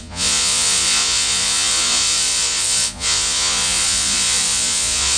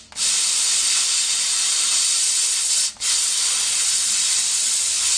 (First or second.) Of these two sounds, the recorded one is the second